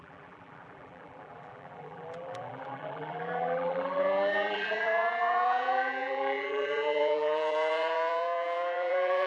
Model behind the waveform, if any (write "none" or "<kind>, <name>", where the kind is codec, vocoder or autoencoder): vocoder, BigVGAN v2